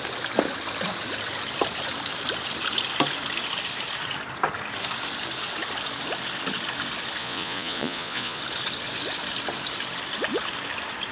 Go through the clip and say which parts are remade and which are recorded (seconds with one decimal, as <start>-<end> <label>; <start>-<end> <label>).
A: 0.0-7.2 recorded; 7.2-8.4 remade; 8.4-11.1 recorded